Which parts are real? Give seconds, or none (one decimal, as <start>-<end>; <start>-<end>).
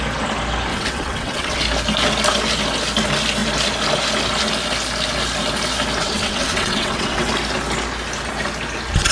0.0-0.7; 1.6-6.0; 7.3-9.1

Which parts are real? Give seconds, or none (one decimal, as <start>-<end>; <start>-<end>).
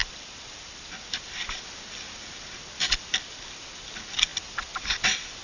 1.4-5.4